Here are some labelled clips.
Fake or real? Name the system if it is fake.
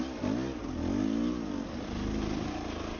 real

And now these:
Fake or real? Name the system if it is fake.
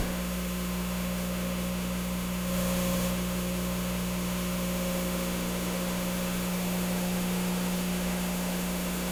fake, autoencoder, DAC-VAE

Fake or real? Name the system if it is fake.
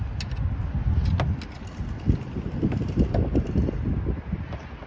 real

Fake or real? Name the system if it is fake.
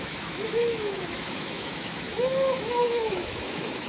fake, autoencoder, DAC-VAE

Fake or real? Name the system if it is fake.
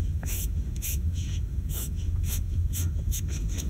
fake, autoencoder, DAC-VAE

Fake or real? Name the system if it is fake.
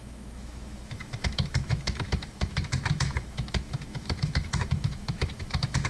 fake, autoencoder, DAC-VAE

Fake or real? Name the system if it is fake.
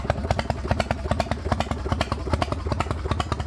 real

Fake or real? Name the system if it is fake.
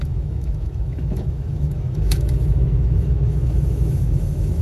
fake, autoencoder, DAC-VAE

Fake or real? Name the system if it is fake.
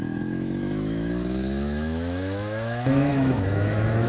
fake, autoencoder, DAC-VAE